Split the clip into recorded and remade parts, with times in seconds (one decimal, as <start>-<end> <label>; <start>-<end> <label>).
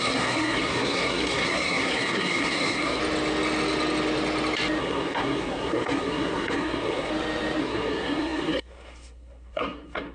0.0-3.0 remade; 3.0-4.8 recorded; 4.8-7.1 remade; 7.1-7.6 recorded; 7.6-10.1 remade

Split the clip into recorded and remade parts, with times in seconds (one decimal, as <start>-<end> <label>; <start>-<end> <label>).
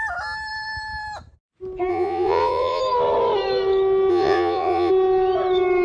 0.0-1.9 recorded; 1.9-2.8 remade; 2.8-4.1 recorded; 4.1-4.9 remade; 4.9-5.8 recorded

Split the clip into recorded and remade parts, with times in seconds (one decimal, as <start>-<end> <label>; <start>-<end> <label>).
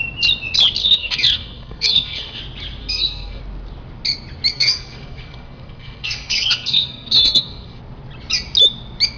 0.0-0.8 recorded; 0.8-2.4 remade; 2.4-2.8 recorded; 2.8-3.4 remade; 3.4-4.5 recorded; 4.5-7.8 remade; 7.8-9.2 recorded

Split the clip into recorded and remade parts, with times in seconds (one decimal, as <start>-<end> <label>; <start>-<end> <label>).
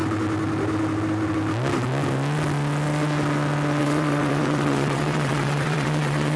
0.0-3.8 recorded; 3.8-6.4 remade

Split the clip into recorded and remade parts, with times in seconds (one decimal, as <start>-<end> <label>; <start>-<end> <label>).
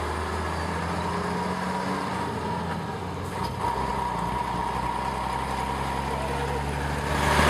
0.0-7.5 recorded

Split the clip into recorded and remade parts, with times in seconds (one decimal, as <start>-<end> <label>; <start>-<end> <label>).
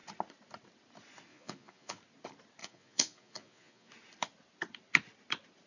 0.0-1.3 recorded; 1.3-2.0 remade; 2.0-2.6 recorded; 2.6-3.9 remade; 3.9-5.7 recorded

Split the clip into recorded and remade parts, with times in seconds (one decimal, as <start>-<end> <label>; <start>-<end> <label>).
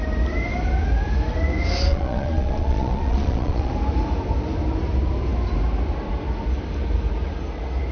0.0-1.9 recorded; 1.9-3.7 remade; 3.7-7.9 recorded